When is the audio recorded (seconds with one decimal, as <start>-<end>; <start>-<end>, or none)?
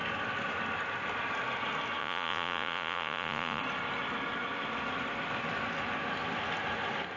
0.0-2.0; 3.6-7.2